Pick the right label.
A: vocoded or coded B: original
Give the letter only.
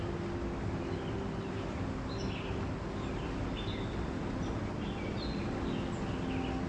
B